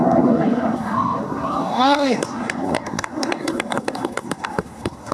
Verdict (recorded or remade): remade